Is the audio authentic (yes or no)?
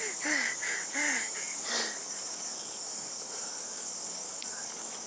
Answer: no